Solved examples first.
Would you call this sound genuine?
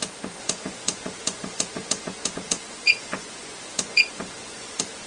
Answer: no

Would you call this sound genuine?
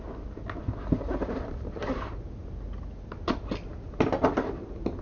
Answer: yes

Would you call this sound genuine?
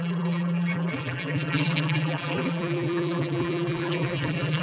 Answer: no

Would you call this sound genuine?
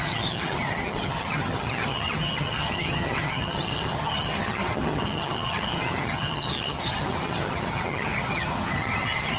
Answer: no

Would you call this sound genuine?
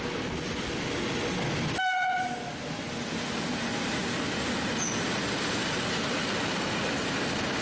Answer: yes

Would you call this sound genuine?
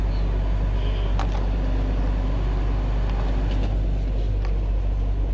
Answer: yes